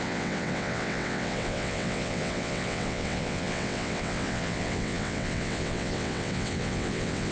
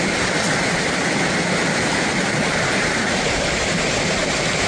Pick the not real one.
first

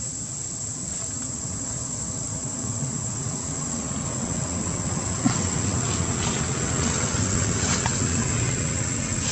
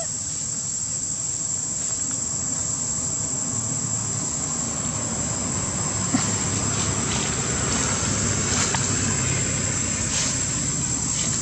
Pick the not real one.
first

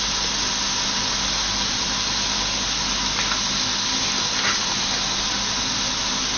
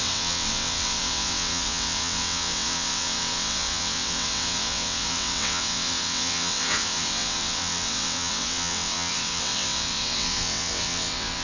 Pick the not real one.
second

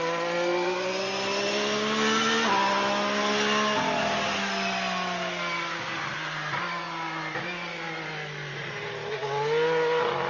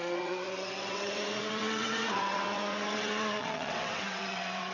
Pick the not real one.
second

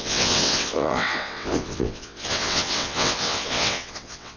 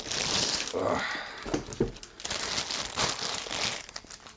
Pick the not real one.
first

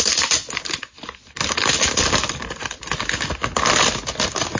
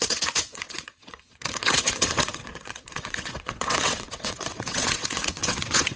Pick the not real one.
second